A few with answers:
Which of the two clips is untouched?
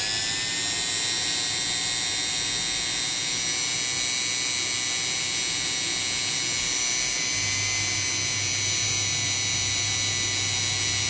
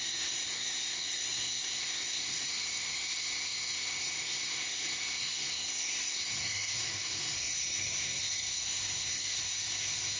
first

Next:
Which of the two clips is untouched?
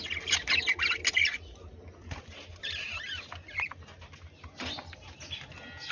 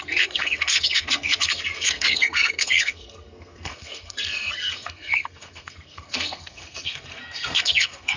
first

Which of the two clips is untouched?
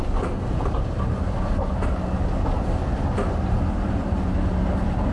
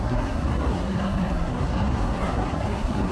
first